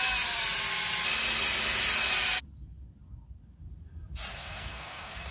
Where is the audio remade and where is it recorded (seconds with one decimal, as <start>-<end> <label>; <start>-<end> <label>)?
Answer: 0.0-4.3 recorded; 4.3-5.3 remade